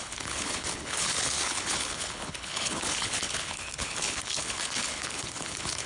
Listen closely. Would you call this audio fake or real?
fake